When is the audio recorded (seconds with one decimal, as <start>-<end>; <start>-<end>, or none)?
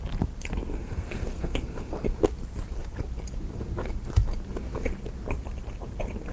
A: 0.0-0.7; 1.9-6.3